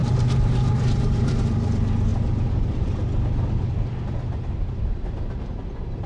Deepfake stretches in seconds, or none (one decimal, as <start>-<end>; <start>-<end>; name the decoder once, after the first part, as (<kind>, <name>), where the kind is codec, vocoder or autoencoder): 0.0-1.3 (vocoder, BigVGAN v2)